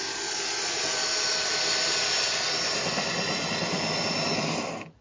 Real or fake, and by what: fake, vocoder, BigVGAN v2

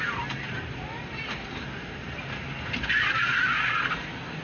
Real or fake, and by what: real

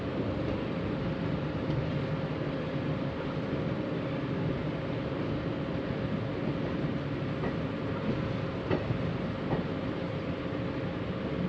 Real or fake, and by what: real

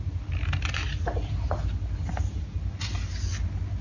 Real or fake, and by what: real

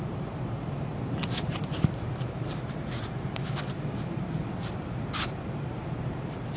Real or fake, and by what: fake, vocoder, BigVGAN v2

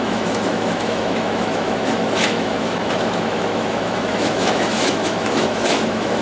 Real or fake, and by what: fake, autoencoder, DAC-VAE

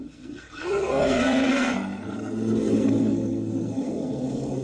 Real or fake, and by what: fake, codec, SNAC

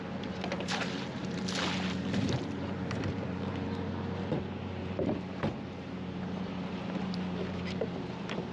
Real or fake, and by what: fake, vocoder, BigVGAN v2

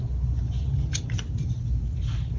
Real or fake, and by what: real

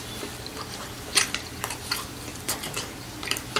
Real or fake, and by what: fake, vocoder, BigVGAN v2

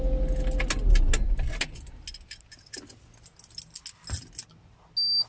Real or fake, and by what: real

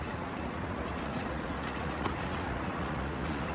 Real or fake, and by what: fake, vocoder, Vocos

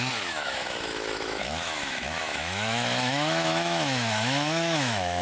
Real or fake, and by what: fake, autoencoder, DAC-VAE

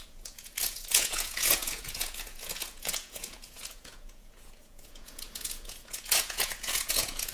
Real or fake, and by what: fake, vocoder, Vocos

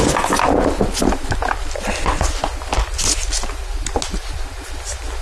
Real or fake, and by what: real